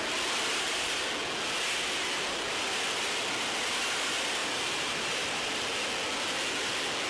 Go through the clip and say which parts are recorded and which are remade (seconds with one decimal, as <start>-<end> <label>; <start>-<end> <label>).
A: 0.0-0.5 recorded; 0.5-1.1 remade; 1.1-4.4 recorded; 4.4-5.6 remade; 5.6-7.1 recorded